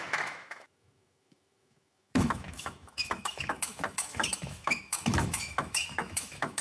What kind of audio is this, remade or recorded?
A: remade